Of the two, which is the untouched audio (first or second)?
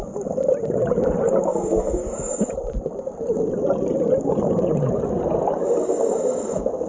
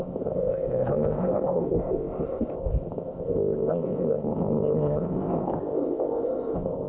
first